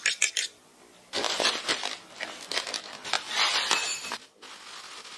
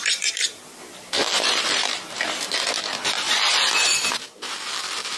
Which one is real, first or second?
first